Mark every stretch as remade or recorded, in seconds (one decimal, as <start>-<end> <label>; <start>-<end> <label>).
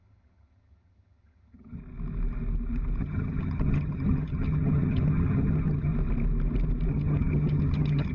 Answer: 0.0-1.8 remade; 1.8-3.0 recorded; 3.0-5.9 remade; 5.9-6.9 recorded; 6.9-8.1 remade